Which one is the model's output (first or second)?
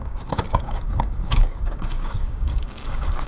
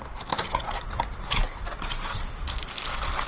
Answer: first